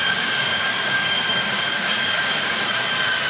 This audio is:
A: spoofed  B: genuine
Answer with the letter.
A